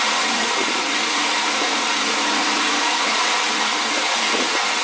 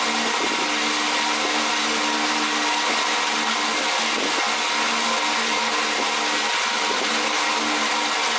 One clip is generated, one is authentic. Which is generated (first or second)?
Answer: first